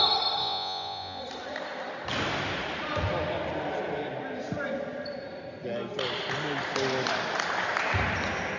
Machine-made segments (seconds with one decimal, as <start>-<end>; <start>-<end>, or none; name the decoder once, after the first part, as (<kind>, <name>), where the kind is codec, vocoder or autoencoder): 0.4-1.2 (vocoder, Vocos)